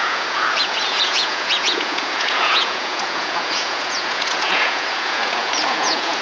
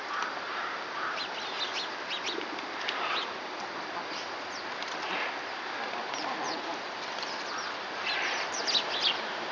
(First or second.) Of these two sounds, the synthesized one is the first